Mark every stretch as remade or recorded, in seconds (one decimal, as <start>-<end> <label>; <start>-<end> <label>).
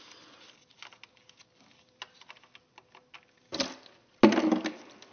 0.0-5.1 recorded